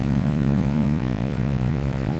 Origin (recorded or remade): remade